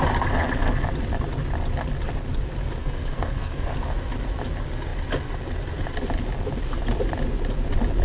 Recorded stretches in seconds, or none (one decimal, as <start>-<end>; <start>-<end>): 0.0-2.8; 3.7-8.0